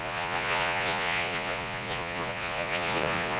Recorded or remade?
remade